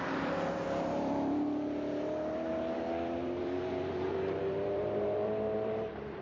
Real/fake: fake